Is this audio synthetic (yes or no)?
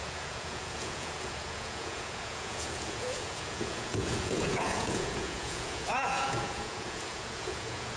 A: yes